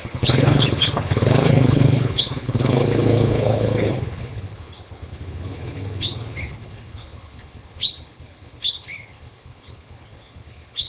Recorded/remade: remade